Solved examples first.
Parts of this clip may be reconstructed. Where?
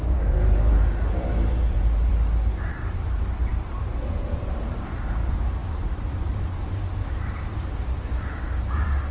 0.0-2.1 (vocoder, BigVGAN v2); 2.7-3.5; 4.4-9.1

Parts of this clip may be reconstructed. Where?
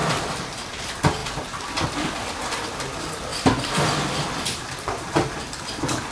0.0-0.6 (vocoder, BigVGAN v2); 3.3-5.4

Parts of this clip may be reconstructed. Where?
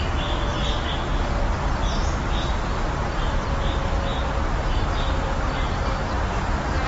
none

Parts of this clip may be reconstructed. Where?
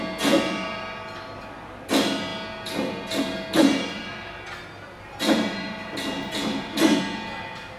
none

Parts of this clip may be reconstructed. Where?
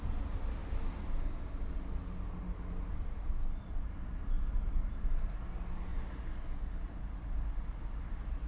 none